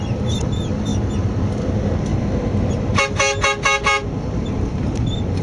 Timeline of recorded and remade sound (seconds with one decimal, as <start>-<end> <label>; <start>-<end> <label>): 0.0-5.4 recorded